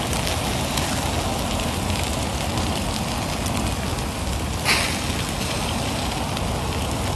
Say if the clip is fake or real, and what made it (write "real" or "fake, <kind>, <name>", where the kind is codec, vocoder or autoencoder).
real